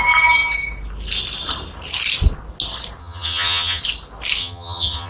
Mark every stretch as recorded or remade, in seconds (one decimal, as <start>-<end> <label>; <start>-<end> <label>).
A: 0.0-3.0 recorded; 3.0-3.8 remade; 3.8-4.4 recorded; 4.4-5.1 remade